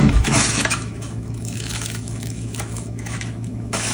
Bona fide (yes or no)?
no